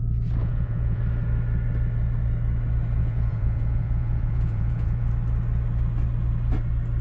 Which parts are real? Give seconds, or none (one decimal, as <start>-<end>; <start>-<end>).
0.0-0.4; 1.0-3.0; 5.1-7.0